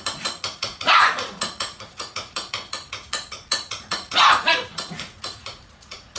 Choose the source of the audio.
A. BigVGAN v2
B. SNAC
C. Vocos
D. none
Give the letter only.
C